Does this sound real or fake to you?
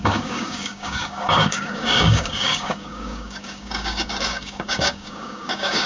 fake